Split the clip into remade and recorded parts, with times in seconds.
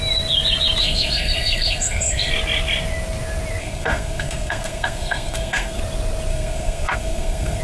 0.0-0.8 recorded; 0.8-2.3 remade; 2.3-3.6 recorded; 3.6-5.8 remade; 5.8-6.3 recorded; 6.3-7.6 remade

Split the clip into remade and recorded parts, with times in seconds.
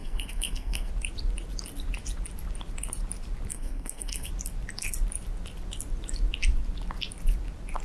0.0-0.9 remade; 0.9-3.5 recorded; 3.5-4.3 remade; 4.3-7.8 recorded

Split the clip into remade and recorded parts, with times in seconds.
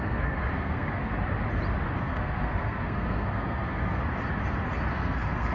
0.0-1.1 remade; 1.1-2.0 recorded; 2.0-4.0 remade; 4.0-4.9 recorded; 4.9-5.5 remade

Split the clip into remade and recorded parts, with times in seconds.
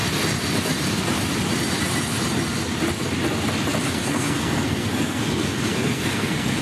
0.0-3.9 recorded; 3.9-6.6 remade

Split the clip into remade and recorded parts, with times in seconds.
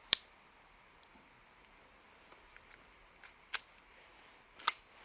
0.0-5.0 recorded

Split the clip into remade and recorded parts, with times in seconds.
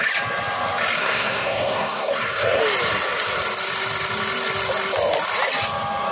0.0-1.0 recorded; 1.0-2.6 remade; 2.6-6.1 recorded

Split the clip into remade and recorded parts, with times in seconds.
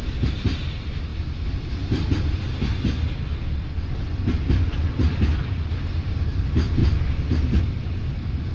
0.0-8.5 recorded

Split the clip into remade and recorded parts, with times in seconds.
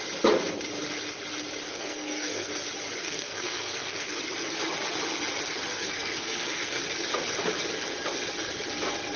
0.0-1.7 recorded; 1.7-2.5 remade; 2.5-3.0 recorded; 3.0-4.1 remade; 4.1-5.7 recorded; 5.7-6.8 remade; 6.8-9.2 recorded